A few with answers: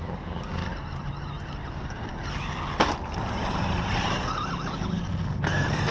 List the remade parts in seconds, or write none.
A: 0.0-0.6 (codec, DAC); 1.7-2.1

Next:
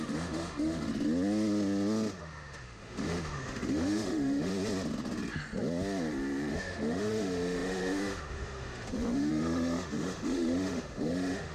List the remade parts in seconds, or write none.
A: 0.0-0.9 (autoencoder, DAC-VAE); 2.2-4.5; 6.5-11.5

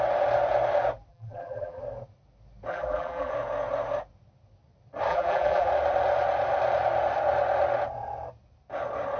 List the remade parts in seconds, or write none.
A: 1.1-1.8 (vocoder, BigVGAN v2); 2.7-3.3; 5.1-5.7